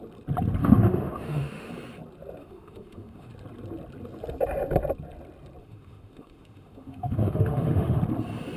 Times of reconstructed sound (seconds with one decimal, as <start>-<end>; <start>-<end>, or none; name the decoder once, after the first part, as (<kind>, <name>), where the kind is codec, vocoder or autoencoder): 0.6-1.7 (autoencoder, DAC-VAE); 2.4-3.3; 5.6-8.0